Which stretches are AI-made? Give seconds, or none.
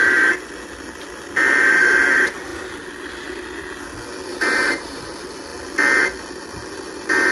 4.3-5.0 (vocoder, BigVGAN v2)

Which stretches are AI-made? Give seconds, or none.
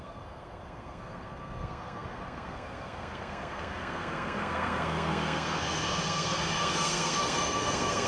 0.0-8.1 (codec, SNAC)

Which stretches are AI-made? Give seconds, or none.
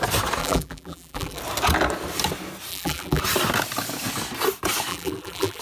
0.4-1.4 (vocoder, BigVGAN v2); 2.7-3.2; 4.9-5.6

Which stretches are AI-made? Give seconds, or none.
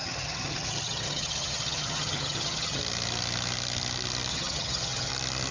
0.0-2.8 (vocoder, HiFi-GAN); 4.3-5.1